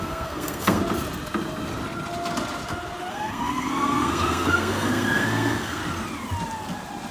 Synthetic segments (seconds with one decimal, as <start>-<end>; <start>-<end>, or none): 0.0-0.8; 3.1-5.8